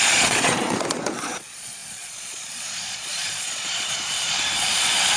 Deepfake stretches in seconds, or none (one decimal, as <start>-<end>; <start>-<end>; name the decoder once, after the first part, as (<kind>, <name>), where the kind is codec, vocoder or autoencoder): 0.0-5.2 (vocoder, Vocos)